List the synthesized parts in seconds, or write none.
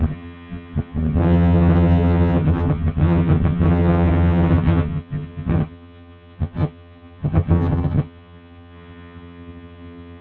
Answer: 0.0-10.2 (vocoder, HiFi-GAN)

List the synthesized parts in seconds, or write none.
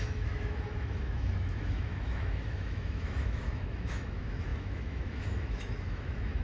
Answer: 0.0-6.4 (autoencoder, DAC-VAE)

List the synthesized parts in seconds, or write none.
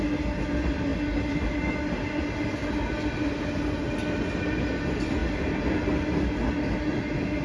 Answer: none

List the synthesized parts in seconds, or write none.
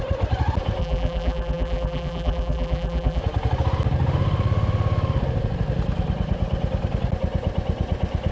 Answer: 0.8-3.2 (vocoder, BigVGAN v2)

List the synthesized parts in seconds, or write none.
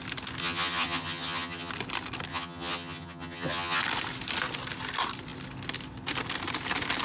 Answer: 0.4-1.7 (vocoder, HiFi-GAN); 2.3-3.8